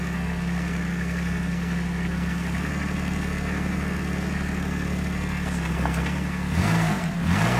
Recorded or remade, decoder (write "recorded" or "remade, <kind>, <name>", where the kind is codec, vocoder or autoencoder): remade, codec, SNAC